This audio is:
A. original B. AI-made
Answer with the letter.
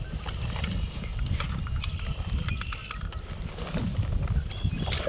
A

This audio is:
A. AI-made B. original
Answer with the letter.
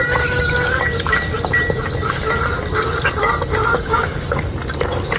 B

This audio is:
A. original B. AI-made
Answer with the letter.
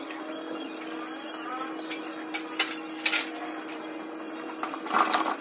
A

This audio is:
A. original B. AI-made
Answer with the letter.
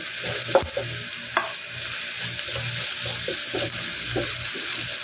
A